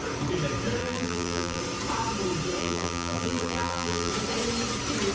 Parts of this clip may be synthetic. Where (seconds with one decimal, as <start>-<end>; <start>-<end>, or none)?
0.8-1.6; 2.6-4.1